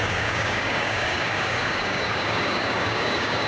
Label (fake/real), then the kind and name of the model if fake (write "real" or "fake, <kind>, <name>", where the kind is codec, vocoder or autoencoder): fake, codec, DAC